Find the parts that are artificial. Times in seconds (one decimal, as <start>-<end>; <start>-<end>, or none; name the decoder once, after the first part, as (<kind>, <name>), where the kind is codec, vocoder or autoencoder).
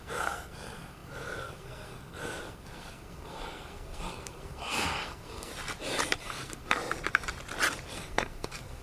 0.0-5.5 (codec, SNAC); 6.2-6.8; 7.9-8.8